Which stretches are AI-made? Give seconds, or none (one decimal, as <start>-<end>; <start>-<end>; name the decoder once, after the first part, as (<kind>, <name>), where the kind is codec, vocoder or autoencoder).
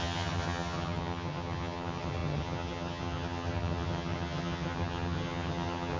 0.0-6.0 (vocoder, HiFi-GAN)